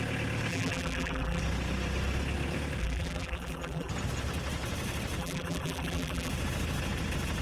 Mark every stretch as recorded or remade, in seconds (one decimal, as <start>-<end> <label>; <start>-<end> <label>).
0.0-0.5 recorded; 0.5-1.4 remade; 1.4-2.8 recorded; 2.8-3.9 remade; 3.9-5.2 recorded; 5.2-6.3 remade; 6.3-7.4 recorded